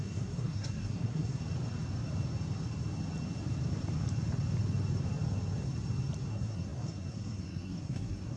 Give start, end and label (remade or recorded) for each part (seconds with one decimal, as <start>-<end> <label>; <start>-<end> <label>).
0.0-1.4 remade; 1.4-6.3 recorded; 6.3-8.4 remade

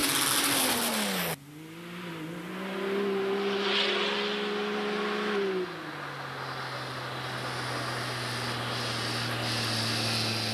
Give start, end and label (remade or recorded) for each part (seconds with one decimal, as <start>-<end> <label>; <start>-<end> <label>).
0.0-10.5 recorded

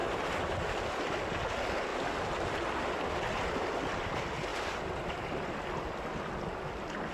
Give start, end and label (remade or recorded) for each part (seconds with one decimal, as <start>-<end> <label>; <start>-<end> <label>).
0.0-7.1 recorded

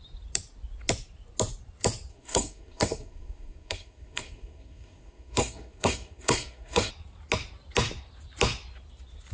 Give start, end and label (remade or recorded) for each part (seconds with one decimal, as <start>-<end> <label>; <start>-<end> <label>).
0.0-2.1 recorded; 2.1-6.9 remade; 6.9-9.3 recorded

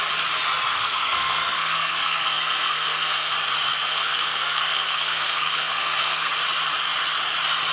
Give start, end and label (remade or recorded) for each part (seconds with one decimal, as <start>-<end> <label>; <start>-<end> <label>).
0.0-0.7 recorded; 0.7-3.3 remade; 3.3-3.9 recorded; 3.9-6.3 remade; 6.3-7.7 recorded

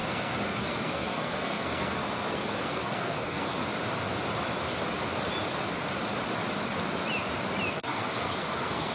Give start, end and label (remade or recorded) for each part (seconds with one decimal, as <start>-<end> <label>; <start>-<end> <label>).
0.0-3.6 remade; 3.6-7.7 recorded; 7.7-8.9 remade